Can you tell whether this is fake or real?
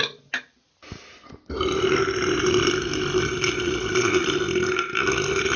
real